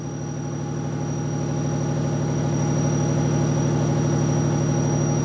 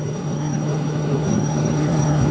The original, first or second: first